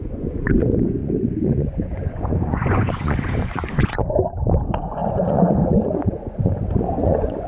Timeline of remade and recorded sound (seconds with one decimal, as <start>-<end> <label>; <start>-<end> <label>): 0.0-7.5 remade